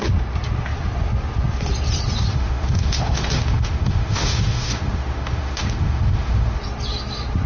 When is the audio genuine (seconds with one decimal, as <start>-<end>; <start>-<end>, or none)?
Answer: 0.0-2.3; 6.6-7.5